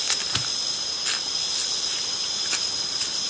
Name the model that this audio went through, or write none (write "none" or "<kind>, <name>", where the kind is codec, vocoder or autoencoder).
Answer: none